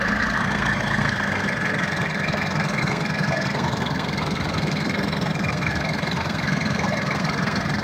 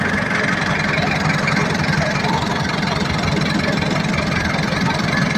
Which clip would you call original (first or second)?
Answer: second